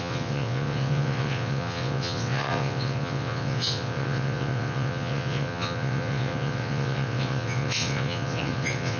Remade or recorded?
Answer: remade